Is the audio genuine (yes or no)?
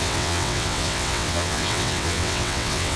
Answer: no